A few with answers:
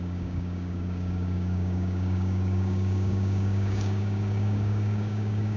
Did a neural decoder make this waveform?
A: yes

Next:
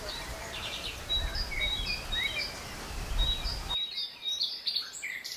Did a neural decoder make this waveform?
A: yes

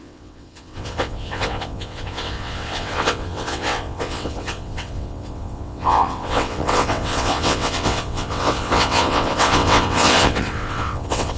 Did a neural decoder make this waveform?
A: yes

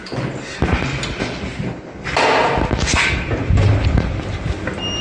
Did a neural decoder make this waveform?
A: no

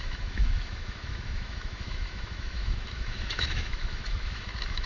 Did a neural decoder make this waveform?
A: yes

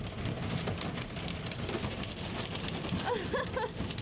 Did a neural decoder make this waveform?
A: no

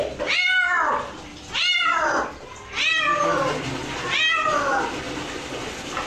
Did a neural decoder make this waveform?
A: no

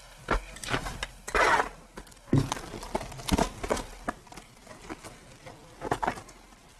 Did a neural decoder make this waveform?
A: no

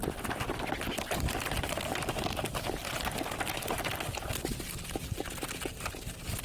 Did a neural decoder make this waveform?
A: no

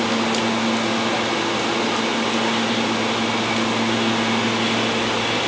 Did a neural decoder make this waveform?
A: no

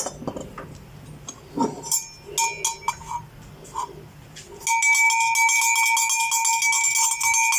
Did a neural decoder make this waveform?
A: no